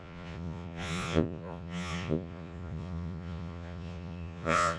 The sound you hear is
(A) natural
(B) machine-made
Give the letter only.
B